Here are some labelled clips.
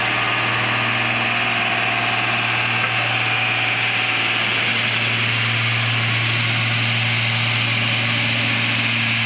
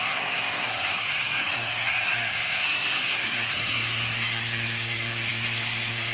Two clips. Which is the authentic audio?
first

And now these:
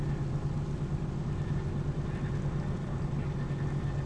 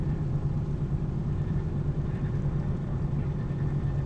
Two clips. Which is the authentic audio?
first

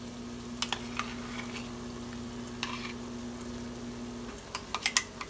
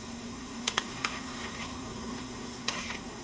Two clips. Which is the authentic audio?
first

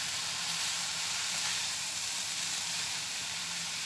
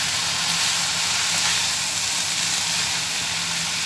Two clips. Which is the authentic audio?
second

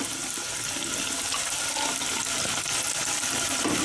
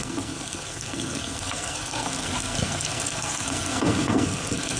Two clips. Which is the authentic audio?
first